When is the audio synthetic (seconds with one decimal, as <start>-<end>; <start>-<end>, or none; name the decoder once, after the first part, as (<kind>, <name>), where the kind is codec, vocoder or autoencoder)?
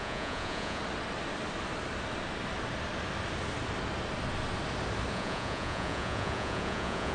0.0-0.8 (vocoder, Vocos); 5.1-7.1